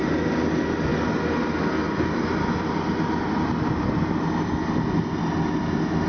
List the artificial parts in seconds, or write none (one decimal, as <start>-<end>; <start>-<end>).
none